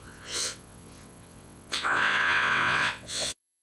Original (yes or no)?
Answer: no